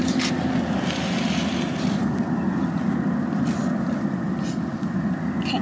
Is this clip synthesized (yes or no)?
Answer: no